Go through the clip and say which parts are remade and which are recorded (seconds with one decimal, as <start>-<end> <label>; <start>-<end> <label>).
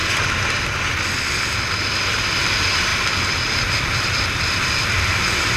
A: 0.0-0.6 remade; 0.6-5.6 recorded